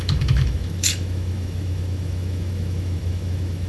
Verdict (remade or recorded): remade